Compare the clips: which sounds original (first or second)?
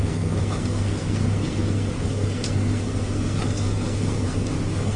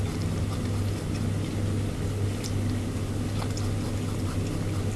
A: second